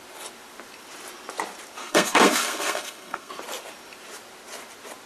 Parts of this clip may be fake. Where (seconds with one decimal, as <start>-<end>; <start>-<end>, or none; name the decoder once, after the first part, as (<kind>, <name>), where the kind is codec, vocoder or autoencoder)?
1.8-3.3 (codec, SNAC)